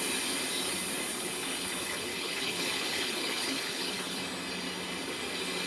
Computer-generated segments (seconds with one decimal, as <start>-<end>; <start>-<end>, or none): 1.1-4.2